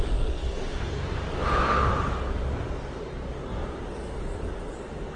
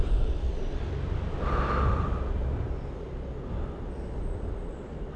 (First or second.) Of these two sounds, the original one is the second